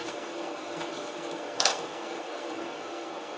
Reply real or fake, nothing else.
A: fake